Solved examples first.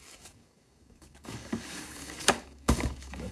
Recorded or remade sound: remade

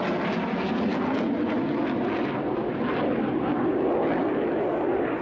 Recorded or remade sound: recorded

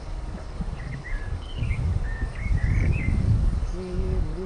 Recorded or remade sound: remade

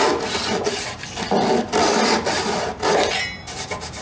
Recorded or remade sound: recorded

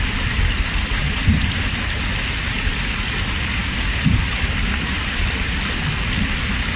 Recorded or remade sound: recorded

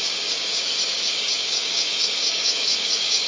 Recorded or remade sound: remade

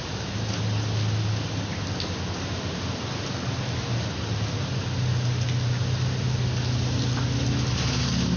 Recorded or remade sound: recorded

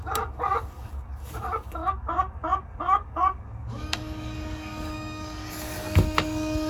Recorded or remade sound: remade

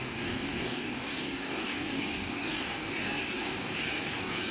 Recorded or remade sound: remade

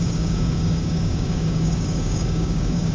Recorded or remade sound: remade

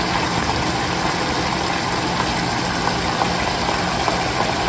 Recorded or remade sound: recorded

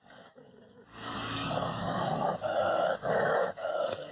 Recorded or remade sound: remade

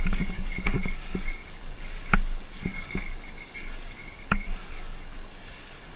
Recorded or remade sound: remade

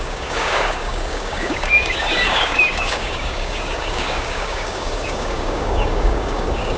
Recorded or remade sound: remade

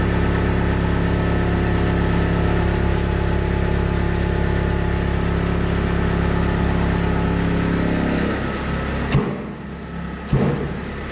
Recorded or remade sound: recorded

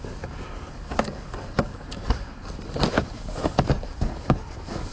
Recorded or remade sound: remade